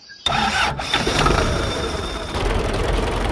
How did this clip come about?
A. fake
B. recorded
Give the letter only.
A